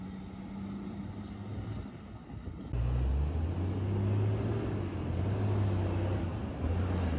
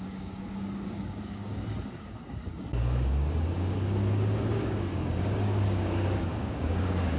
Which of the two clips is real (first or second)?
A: first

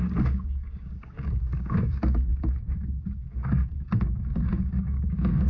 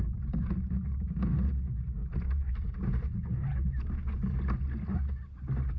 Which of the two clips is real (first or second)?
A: second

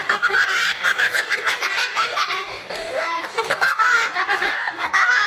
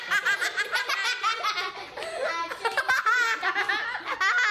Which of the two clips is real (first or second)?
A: second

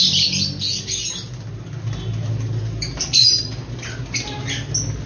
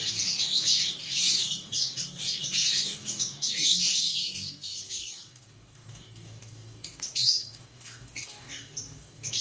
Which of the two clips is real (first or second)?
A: first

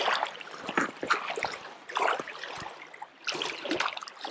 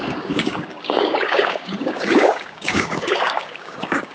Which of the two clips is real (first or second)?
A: first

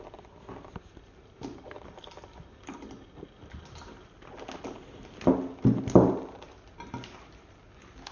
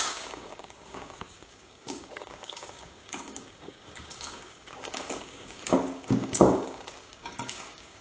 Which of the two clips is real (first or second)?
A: first